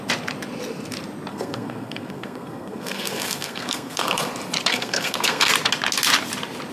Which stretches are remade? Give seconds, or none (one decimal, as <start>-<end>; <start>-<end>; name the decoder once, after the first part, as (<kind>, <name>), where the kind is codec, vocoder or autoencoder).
1.3-4.3 (codec, SNAC); 4.7-5.5